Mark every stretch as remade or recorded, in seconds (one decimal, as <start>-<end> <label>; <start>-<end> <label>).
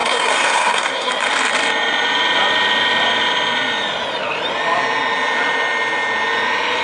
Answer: 0.0-1.1 remade; 1.1-6.8 recorded